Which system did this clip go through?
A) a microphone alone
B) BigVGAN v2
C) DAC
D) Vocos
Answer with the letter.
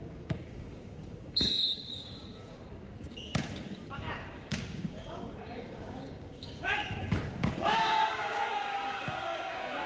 C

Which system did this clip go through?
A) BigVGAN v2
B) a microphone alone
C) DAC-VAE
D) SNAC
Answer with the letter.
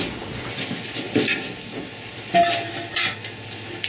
B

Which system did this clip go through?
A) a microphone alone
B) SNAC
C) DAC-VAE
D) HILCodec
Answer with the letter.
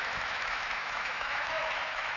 C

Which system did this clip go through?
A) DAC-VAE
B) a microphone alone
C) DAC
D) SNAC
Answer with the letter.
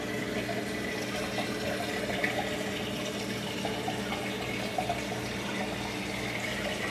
B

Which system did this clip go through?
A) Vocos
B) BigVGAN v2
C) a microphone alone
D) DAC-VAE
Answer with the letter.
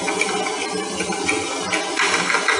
C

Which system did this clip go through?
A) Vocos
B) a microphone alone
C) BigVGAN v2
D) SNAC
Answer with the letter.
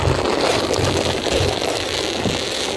B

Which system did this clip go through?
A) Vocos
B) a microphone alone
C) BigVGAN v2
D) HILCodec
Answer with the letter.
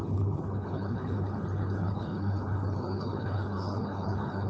D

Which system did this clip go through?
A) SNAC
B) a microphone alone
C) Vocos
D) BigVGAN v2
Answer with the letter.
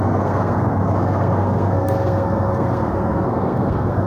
A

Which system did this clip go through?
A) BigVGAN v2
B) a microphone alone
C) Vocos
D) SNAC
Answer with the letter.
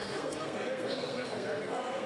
D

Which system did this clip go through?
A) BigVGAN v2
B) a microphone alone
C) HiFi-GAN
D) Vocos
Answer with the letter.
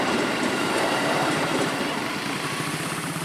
A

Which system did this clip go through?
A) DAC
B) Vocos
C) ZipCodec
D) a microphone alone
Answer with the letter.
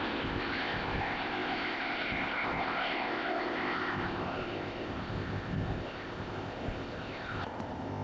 C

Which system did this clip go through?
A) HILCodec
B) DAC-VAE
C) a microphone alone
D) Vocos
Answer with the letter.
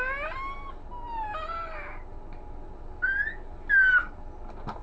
C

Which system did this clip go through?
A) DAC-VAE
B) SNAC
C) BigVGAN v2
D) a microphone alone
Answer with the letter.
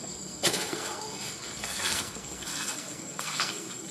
B